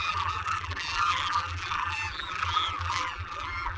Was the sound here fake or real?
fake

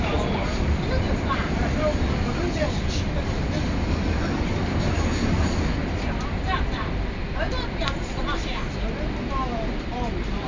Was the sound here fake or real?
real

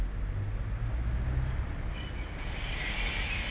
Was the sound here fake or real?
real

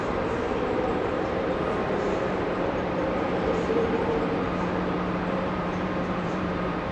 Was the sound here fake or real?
fake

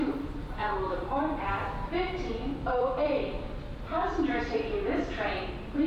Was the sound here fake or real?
fake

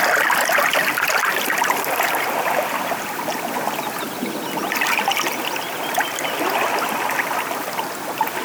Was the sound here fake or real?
real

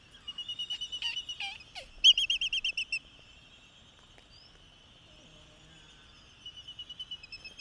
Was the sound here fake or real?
real